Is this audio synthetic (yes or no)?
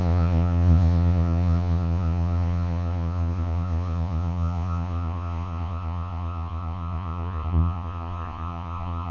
yes